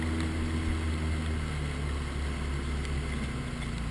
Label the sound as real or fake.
real